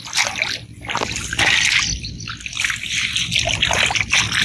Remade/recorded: recorded